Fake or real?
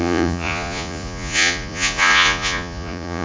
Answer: fake